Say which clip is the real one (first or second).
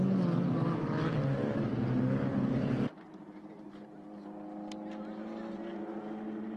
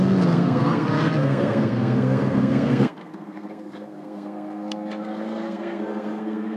first